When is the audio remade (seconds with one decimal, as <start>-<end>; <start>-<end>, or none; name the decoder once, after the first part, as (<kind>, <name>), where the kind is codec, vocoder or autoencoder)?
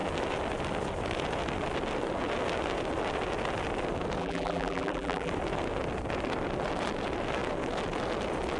4.2-5.3 (vocoder, BigVGAN v2)